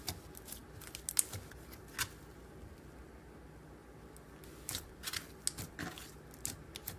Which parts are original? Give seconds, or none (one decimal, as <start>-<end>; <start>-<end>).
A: 0.0-7.0